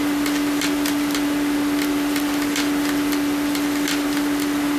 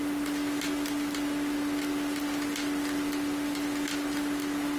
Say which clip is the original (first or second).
second